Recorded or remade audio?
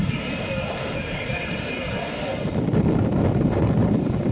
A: recorded